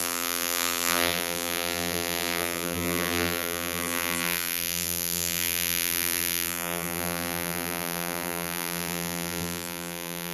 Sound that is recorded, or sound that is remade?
remade